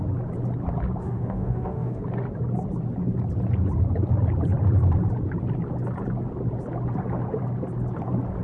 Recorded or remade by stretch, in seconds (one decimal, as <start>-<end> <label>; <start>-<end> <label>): 0.0-1.0 recorded; 1.0-2.0 remade; 2.0-8.4 recorded